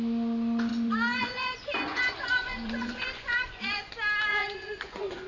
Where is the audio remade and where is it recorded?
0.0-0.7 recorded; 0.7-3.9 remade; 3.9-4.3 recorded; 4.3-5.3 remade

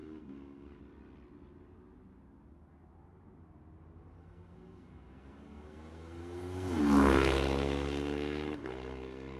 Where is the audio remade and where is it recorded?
0.0-0.8 remade; 0.8-4.2 recorded; 4.2-9.4 remade